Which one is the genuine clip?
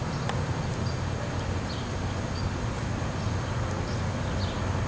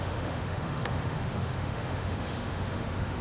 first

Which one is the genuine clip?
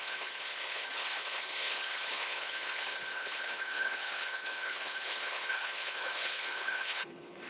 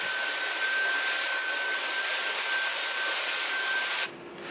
second